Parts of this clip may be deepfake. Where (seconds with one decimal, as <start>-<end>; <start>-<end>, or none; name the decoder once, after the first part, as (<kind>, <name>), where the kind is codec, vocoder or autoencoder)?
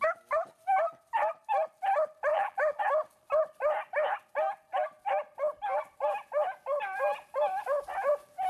2.3-2.8 (vocoder, BigVGAN v2)